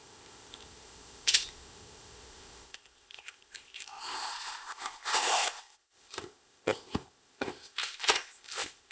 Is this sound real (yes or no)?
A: no